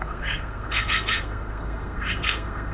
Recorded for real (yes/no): no